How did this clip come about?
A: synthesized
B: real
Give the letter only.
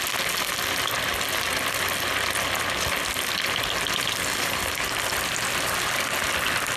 B